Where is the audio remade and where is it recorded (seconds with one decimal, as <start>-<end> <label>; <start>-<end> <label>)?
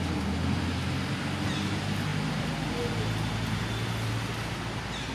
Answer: 0.0-5.1 recorded